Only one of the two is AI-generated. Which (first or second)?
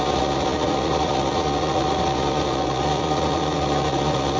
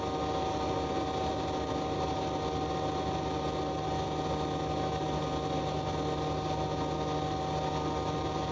first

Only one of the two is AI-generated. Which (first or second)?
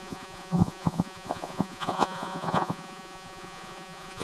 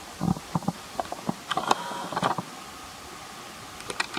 first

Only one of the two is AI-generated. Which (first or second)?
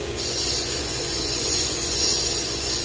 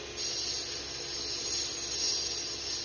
first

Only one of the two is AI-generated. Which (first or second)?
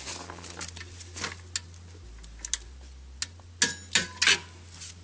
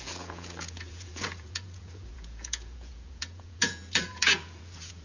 second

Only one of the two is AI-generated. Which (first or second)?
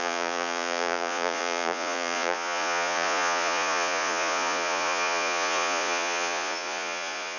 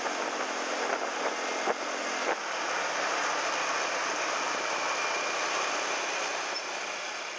first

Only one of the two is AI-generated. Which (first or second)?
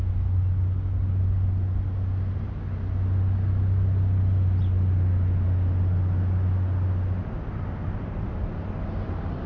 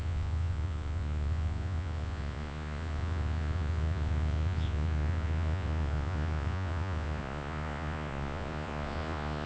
second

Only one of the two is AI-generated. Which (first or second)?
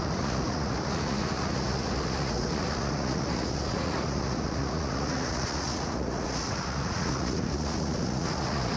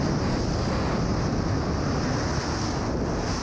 first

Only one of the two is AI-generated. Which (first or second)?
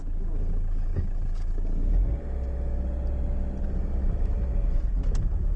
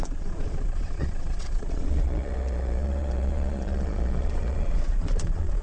second